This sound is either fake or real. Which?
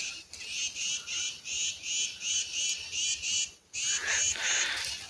real